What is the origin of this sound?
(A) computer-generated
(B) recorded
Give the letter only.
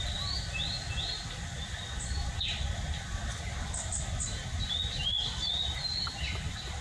B